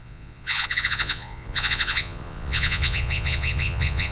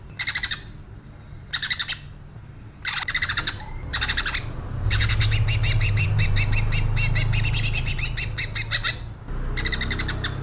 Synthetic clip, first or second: first